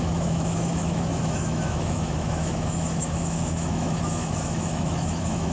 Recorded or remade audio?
remade